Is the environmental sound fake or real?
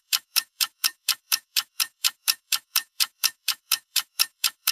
fake